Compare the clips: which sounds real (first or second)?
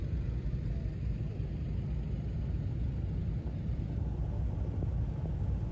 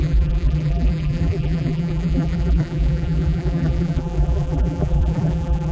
first